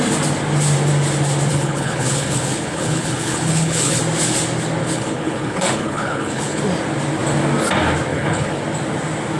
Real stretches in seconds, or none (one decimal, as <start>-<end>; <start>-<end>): 0.0-1.5; 4.0-4.8; 6.6-8.1; 8.6-9.4